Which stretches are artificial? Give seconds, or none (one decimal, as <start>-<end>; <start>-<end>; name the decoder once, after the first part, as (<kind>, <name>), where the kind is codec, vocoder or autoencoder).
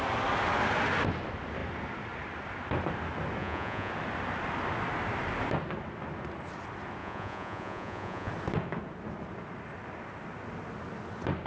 3.4-3.9 (vocoder, Vocos); 7.0-8.3